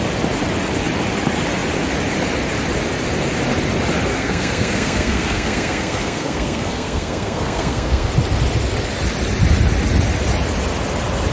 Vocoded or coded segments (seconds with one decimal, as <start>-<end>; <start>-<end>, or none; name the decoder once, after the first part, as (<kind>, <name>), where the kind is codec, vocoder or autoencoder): 4.1-8.1 (codec, SNAC)